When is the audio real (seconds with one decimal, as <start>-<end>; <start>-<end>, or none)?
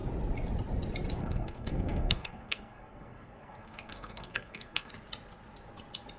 0.0-1.2; 4.9-6.2